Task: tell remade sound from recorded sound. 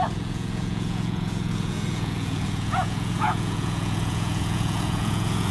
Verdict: remade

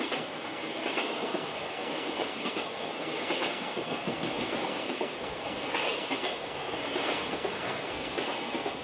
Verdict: remade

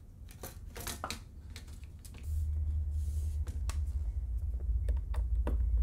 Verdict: recorded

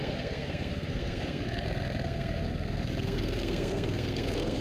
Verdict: remade